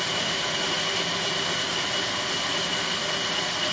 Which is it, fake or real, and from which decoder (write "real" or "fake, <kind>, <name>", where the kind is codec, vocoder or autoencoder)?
real